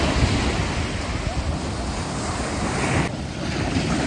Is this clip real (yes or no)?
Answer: yes